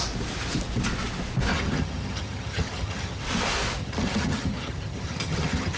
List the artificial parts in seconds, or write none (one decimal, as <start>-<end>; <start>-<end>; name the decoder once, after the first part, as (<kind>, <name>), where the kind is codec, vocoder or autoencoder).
1.5-3.2 (vocoder, HiFi-GAN); 3.8-5.8